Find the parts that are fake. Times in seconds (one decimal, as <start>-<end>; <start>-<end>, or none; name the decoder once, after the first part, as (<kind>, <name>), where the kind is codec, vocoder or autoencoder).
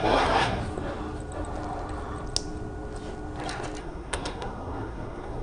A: 0.0-0.6 (codec, SNAC); 3.8-5.4